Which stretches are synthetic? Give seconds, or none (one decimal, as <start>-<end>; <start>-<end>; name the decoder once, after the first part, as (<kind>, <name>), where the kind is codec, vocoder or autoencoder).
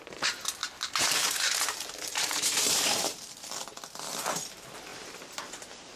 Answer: 0.6-3.4 (vocoder, BigVGAN v2); 4.9-5.4